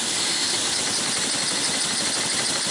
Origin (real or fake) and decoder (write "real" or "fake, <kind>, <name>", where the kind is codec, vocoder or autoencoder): real